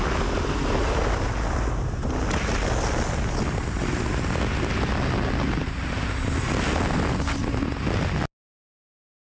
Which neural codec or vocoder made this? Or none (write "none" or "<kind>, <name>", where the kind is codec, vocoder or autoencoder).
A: none